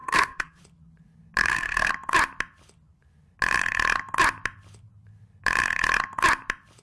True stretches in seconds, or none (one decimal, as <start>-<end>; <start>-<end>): 0.6-1.4; 1.9-6.8